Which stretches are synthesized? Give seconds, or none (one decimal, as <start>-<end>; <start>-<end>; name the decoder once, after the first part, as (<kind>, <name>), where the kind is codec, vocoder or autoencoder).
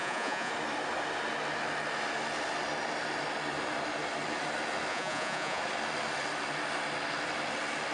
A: 0.0-0.5 (vocoder, Vocos); 4.9-5.6